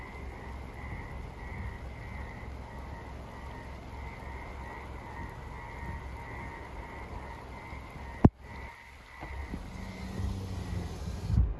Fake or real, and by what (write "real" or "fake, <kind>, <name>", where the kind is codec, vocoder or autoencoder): real